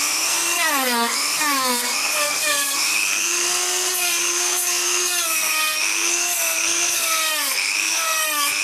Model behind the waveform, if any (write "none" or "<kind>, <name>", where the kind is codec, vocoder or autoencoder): codec, SNAC